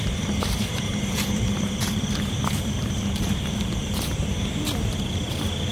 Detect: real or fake fake